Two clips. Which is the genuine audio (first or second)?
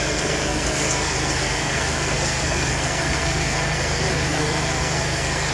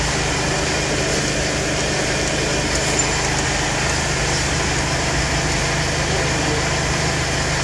second